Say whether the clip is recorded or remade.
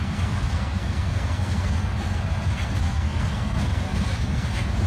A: remade